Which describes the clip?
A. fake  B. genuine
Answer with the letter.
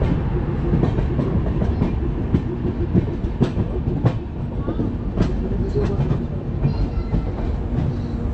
B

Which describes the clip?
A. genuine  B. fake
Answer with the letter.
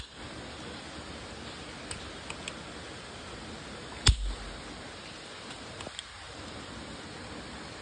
A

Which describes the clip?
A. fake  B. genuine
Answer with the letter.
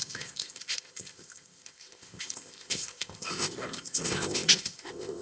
A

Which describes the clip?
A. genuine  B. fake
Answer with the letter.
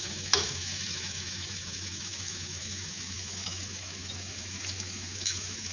B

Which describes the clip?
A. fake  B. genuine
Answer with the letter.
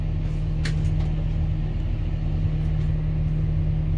B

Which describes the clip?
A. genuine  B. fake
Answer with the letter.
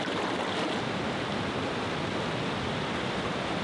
A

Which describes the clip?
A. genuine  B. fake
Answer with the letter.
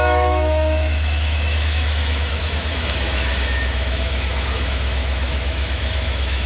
B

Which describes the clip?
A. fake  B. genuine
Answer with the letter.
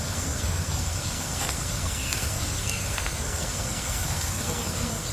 A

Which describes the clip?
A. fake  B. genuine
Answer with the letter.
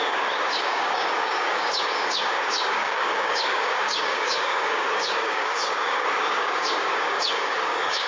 A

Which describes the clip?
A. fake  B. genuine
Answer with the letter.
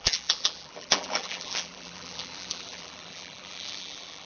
A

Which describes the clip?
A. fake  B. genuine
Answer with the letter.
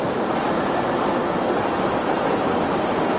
A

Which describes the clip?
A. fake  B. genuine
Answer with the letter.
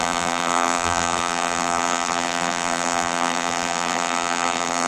A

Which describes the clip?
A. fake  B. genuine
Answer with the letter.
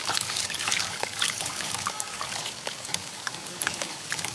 A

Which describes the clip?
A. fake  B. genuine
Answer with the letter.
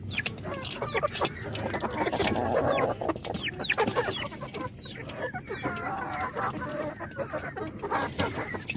B